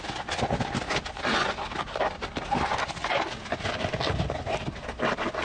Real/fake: real